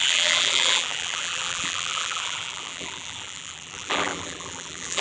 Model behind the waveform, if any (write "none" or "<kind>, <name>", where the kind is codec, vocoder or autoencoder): vocoder, BigVGAN v2